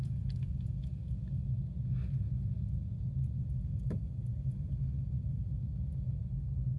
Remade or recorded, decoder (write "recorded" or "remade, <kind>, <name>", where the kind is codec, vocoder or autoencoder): recorded